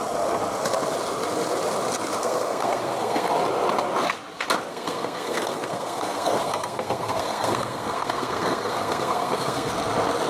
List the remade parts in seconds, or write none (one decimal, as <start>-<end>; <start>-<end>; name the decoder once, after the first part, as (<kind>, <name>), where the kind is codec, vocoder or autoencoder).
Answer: 2.2-3.3 (codec, SNAC); 4.7-9.7